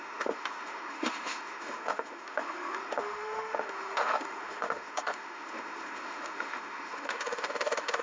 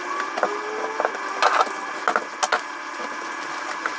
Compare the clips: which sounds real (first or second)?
second